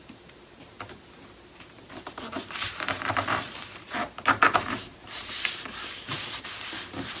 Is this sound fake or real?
fake